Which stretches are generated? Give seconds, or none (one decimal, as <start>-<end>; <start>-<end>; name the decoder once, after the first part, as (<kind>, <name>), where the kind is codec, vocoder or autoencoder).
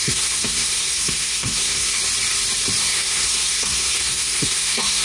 0.0-2.0 (codec, SNAC); 2.8-5.0